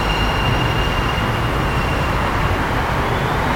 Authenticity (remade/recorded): recorded